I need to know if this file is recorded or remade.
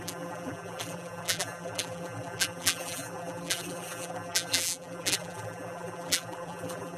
remade